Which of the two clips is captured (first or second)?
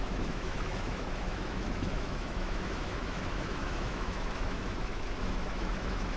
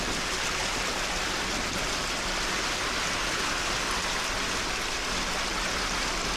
second